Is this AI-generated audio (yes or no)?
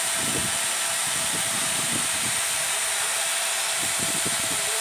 yes